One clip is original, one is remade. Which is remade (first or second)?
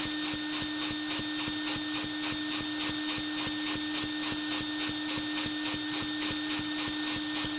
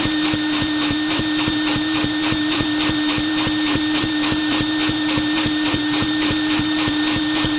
second